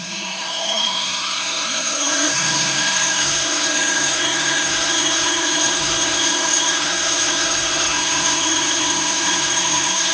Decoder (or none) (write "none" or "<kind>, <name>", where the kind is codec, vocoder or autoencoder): codec, SNAC